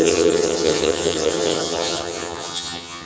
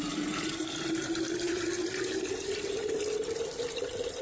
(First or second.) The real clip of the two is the second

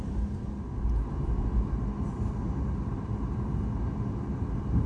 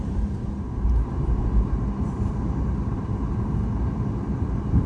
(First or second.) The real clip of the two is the first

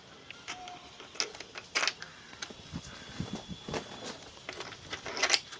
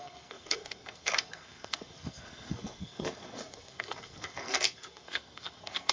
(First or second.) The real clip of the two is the first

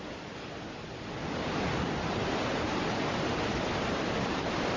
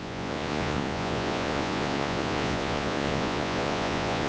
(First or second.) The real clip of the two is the first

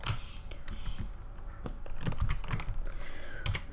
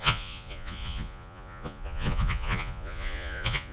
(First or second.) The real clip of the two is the first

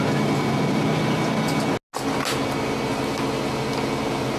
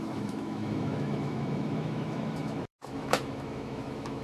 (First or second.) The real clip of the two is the first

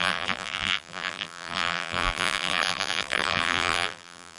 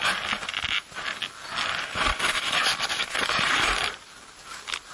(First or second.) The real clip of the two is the second